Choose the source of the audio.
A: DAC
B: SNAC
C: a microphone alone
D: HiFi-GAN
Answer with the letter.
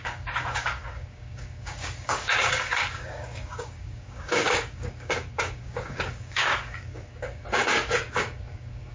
A